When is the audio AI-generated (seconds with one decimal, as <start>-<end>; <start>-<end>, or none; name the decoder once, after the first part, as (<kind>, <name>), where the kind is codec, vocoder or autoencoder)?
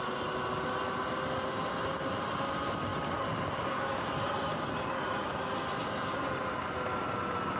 none